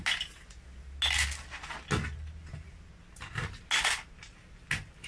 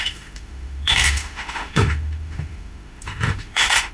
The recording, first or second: first